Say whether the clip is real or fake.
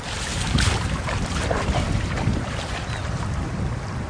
real